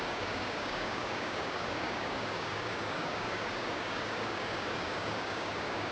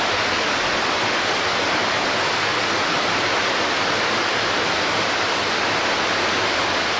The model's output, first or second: first